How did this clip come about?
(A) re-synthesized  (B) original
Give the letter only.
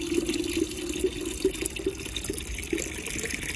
B